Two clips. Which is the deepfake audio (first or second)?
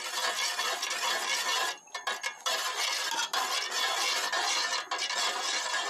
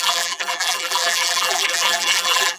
second